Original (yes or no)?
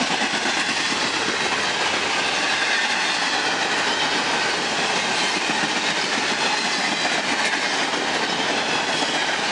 yes